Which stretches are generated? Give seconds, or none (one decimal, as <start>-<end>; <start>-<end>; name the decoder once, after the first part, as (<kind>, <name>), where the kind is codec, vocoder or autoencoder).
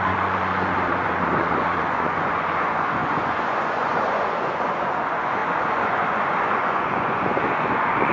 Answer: 0.0-8.1 (vocoder, Vocos)